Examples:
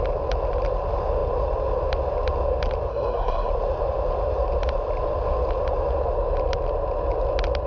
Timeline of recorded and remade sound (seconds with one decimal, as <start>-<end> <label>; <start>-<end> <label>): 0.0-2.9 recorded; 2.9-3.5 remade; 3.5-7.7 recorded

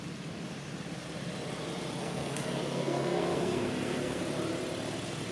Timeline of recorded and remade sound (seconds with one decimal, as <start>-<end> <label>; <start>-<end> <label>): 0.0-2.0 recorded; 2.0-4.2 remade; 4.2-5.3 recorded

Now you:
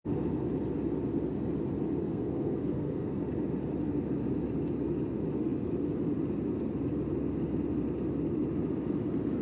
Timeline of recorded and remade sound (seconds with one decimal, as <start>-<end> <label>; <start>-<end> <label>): 0.0-2.0 recorded; 2.0-3.2 remade; 3.2-9.4 recorded

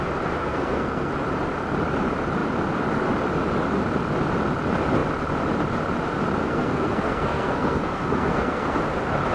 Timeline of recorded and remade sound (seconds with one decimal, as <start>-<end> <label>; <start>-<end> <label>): 0.0-0.4 recorded; 0.4-1.1 remade; 1.1-6.4 recorded; 6.4-8.8 remade; 8.8-9.3 recorded

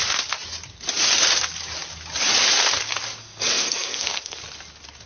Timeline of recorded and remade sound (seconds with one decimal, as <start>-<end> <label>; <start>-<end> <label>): 0.0-3.2 recorded; 3.2-4.4 remade; 4.4-5.1 recorded

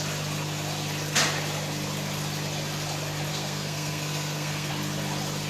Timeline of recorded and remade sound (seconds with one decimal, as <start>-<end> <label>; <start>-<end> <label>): 0.0-3.3 recorded; 3.3-4.7 remade; 4.7-5.5 recorded